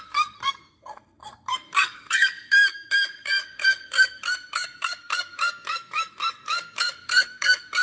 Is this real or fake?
fake